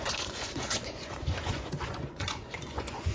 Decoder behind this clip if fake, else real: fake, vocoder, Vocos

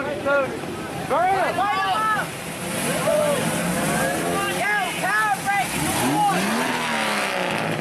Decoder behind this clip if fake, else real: real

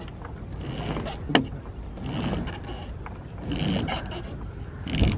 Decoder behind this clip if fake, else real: real